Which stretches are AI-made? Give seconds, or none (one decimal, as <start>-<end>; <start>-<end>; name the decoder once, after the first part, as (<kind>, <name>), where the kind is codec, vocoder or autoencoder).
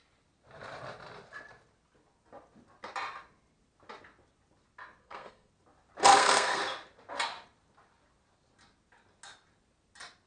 5.0-5.5 (codec, SNAC); 6.1-6.6